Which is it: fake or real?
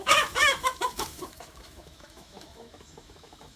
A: fake